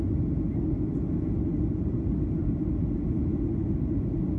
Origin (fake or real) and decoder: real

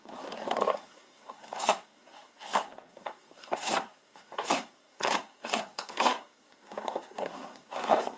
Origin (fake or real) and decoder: fake, codec, SNAC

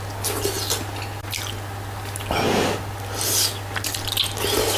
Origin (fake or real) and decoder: real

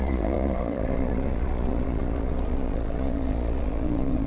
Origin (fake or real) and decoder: fake, vocoder, Vocos